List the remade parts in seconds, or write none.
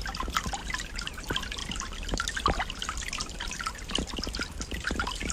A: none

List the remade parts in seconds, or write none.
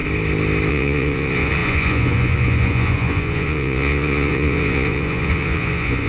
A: 0.7-6.1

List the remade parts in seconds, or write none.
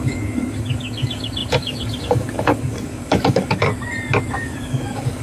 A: 0.0-3.7; 4.3-5.2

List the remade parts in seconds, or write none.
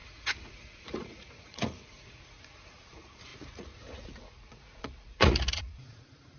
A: 0.0-6.4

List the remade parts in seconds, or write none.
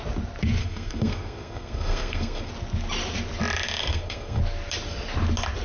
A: 0.6-2.5; 3.8-4.4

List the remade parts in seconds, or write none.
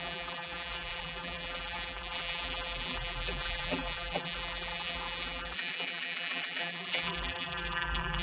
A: 0.0-8.2